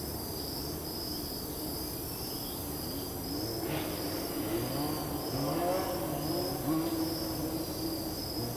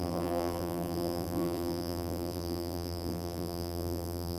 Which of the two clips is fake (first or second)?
second